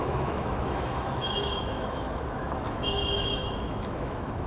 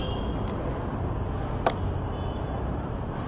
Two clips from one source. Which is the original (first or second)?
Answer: second